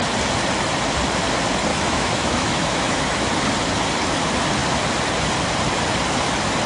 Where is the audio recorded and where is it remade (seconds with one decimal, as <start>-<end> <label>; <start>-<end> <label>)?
0.0-1.7 recorded; 1.7-3.3 remade; 3.3-6.7 recorded